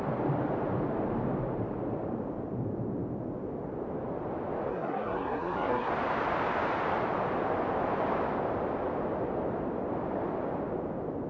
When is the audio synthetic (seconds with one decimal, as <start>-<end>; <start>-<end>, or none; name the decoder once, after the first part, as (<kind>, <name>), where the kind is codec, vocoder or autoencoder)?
4.7-5.9 (codec, SNAC)